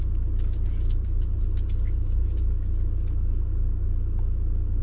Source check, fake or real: real